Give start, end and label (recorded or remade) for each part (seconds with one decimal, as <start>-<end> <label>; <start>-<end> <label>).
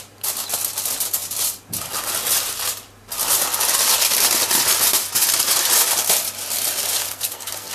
0.0-7.0 recorded; 7.0-7.7 remade